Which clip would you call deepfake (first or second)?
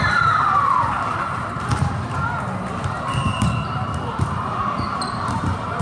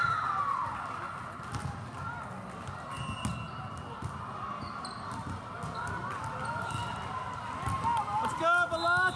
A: first